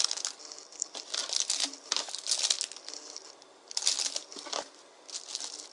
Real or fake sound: real